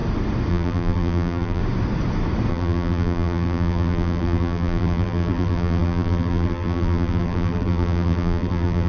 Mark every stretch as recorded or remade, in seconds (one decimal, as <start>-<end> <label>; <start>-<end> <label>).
0.0-0.5 recorded; 0.5-1.6 remade; 1.6-2.5 recorded; 2.5-8.9 remade